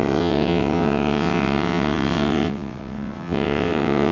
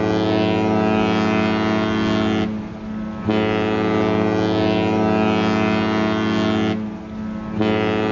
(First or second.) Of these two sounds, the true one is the second